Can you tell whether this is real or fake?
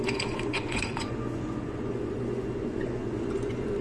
fake